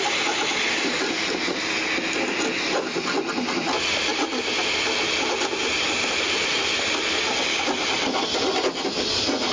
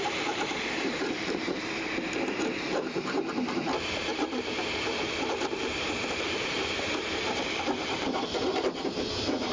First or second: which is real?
first